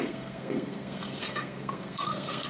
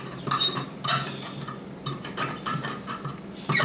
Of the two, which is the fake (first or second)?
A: first